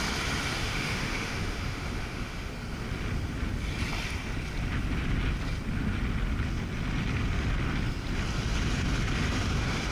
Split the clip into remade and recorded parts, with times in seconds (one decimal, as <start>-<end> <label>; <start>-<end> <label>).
0.0-0.6 recorded; 0.6-2.5 remade; 2.5-9.9 recorded